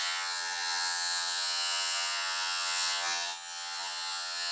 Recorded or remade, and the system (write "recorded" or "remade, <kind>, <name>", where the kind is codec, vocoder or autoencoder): remade, vocoder, HiFi-GAN